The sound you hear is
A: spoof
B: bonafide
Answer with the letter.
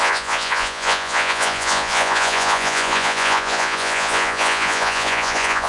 A